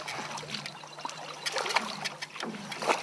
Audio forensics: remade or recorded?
recorded